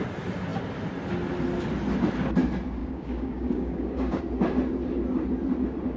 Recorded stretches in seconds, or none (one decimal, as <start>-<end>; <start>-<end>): 0.0-2.8; 4.2-6.0